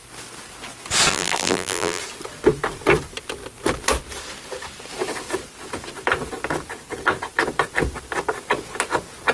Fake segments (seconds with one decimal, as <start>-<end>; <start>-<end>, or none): 1.1-2.0